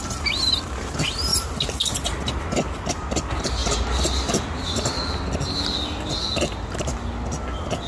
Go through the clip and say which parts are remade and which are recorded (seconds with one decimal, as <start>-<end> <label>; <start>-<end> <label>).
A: 0.0-7.9 recorded